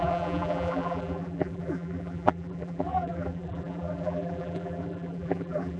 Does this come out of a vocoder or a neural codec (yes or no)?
yes